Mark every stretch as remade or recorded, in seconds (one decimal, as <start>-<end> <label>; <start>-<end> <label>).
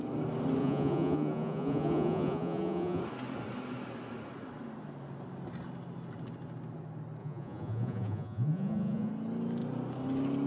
0.0-0.6 recorded; 0.6-3.0 remade; 3.0-7.2 recorded; 7.2-9.1 remade; 9.1-10.5 recorded